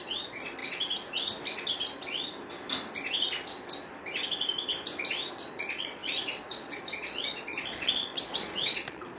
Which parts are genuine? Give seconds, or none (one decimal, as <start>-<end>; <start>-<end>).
0.6-5.3